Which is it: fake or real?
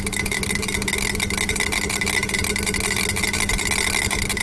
real